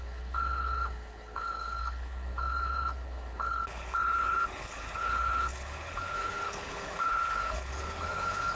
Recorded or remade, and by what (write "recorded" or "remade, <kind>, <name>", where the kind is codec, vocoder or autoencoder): remade, codec, HILCodec